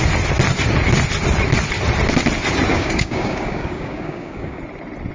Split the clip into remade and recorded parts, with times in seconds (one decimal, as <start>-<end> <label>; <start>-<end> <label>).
0.0-2.7 recorded; 2.7-4.6 remade; 4.6-5.1 recorded